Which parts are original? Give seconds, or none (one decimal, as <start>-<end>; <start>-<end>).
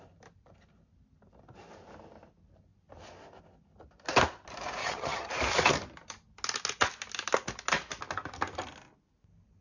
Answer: 0.0-4.8; 5.3-9.6